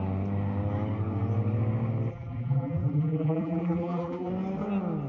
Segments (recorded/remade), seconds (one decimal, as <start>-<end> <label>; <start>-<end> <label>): 0.0-2.1 recorded; 2.1-4.3 remade; 4.3-5.1 recorded